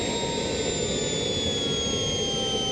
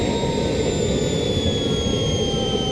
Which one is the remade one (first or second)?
second